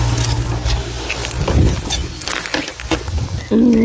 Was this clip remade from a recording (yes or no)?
no